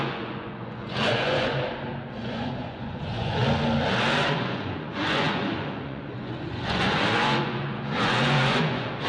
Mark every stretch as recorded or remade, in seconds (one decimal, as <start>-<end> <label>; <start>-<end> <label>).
0.0-1.5 remade; 1.5-2.1 recorded; 2.1-3.4 remade; 3.4-4.2 recorded; 4.2-9.1 remade